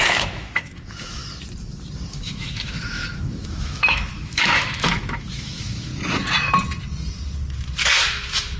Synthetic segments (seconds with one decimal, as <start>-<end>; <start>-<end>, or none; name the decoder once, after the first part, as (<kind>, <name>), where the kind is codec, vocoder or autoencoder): 0.0-1.2 (autoencoder, DAC-VAE); 2.1-5.9; 8.1-8.6